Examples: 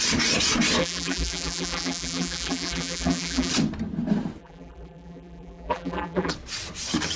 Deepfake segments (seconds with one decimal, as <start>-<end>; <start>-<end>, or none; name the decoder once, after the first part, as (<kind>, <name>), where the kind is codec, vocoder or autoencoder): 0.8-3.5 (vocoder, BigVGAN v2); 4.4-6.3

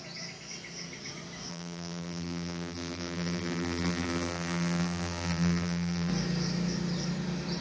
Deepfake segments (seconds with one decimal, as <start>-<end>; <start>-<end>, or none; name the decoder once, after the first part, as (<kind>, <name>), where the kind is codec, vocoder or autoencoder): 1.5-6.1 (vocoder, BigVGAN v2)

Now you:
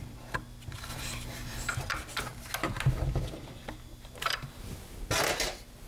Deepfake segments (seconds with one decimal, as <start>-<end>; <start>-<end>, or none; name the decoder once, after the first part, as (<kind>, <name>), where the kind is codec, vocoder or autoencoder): 0.9-1.7 (vocoder, BigVGAN v2); 3.9-4.6